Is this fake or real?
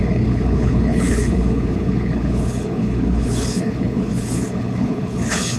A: fake